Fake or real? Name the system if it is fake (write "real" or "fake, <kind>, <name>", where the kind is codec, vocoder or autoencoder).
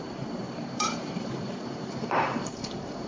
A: fake, vocoder, BigVGAN v2